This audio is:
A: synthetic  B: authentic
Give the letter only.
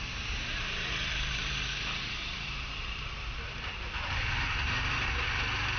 A